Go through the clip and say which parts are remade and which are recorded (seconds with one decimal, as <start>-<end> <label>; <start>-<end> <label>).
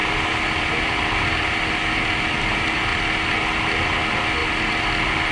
0.0-5.3 recorded